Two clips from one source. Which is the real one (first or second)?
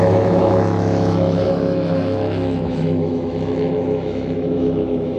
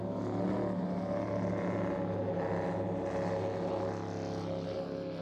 second